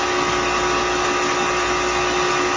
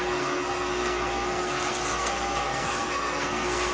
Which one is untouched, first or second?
first